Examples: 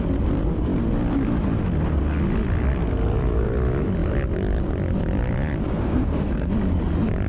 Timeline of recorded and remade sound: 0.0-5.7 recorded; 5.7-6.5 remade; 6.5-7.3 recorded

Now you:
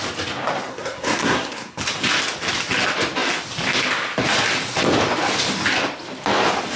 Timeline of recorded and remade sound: 0.0-0.7 recorded; 0.7-1.8 remade; 1.8-6.8 recorded

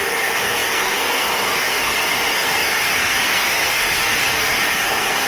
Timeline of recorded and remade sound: 0.0-5.3 remade